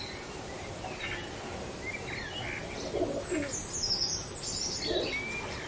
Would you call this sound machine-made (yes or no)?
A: no